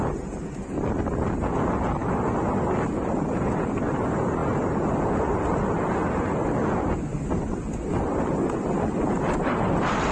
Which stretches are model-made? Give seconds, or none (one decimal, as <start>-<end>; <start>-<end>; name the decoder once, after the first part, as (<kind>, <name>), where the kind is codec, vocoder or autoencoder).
none